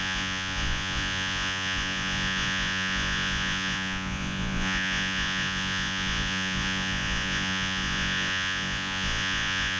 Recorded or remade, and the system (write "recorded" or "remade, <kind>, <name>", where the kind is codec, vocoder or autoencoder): remade, vocoder, Vocos